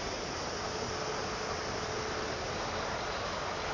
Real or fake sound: real